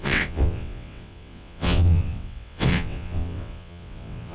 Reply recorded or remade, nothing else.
remade